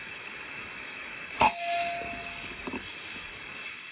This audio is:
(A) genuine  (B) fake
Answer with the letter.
B